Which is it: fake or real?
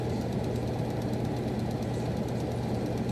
real